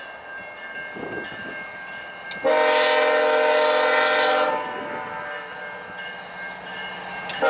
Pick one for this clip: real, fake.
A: real